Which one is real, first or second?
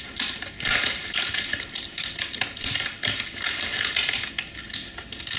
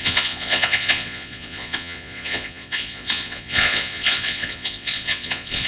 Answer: first